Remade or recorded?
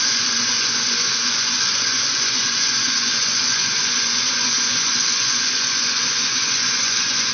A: remade